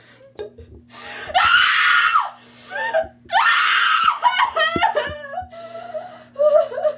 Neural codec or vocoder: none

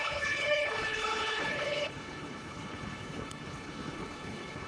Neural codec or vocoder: codec, HILCodec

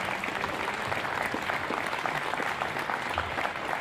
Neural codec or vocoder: none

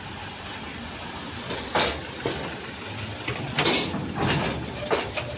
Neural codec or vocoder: none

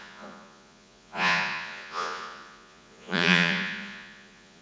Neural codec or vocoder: vocoder, Vocos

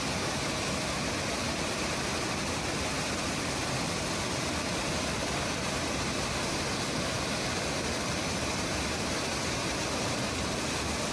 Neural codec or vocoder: none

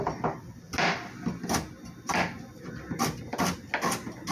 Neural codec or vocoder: none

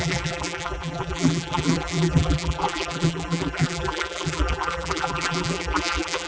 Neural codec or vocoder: vocoder, BigVGAN v2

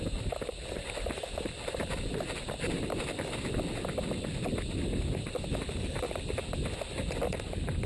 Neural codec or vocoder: none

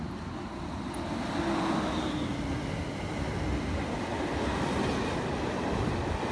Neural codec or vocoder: none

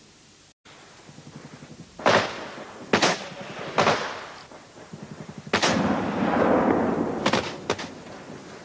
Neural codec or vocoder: none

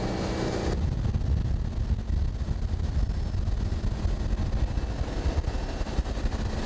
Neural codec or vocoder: none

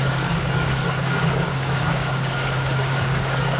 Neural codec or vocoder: codec, DAC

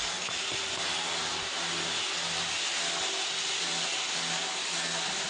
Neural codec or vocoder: none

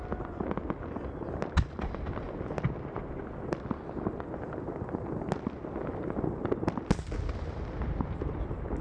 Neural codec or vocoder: none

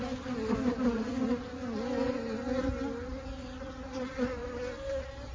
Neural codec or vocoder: none